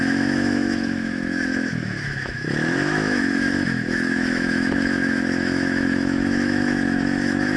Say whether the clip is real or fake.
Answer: fake